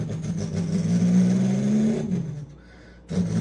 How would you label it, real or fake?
real